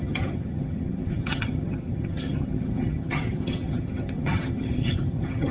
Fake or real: fake